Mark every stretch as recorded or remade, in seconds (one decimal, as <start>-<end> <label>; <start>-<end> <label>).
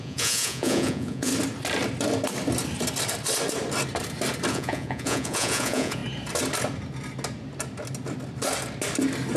0.0-1.3 remade; 1.3-4.5 recorded; 4.5-6.0 remade; 6.0-9.4 recorded